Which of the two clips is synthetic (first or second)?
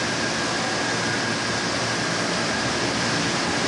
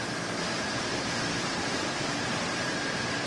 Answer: second